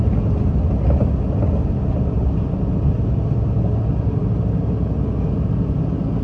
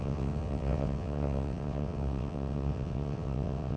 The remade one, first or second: second